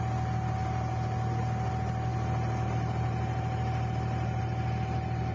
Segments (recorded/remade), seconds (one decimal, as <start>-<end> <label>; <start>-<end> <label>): 0.0-5.3 recorded